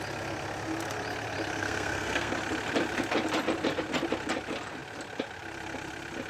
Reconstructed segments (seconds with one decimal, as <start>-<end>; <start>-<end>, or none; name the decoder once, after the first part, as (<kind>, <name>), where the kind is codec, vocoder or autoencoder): 1.6-2.3 (codec, SNAC)